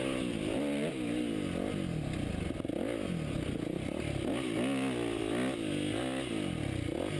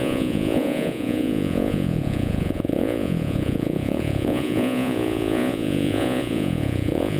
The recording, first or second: first